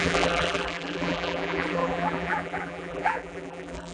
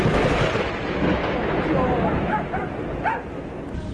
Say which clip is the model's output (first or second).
first